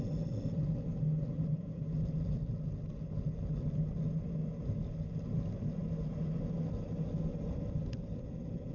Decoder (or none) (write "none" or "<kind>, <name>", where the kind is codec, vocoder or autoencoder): none